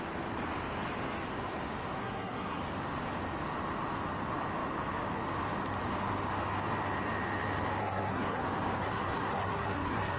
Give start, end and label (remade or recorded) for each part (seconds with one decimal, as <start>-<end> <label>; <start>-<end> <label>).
0.0-2.0 recorded; 2.0-2.6 remade; 2.6-7.8 recorded; 7.8-8.4 remade; 8.4-8.8 recorded; 8.8-10.2 remade